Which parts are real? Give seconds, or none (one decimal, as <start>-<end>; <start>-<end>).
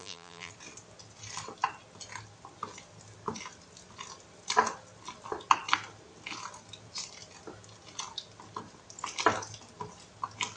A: 0.5-10.6